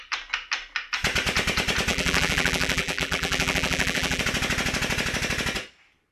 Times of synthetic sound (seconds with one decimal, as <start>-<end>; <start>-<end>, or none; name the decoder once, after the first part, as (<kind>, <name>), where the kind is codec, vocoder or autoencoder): 1.9-4.2 (vocoder, BigVGAN v2)